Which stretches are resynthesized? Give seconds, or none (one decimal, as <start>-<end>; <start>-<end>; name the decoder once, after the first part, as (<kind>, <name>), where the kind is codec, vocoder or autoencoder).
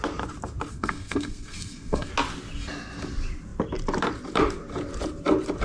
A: 0.7-2.1 (codec, SNAC)